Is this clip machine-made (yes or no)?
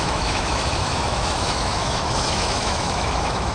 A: yes